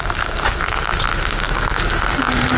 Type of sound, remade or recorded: recorded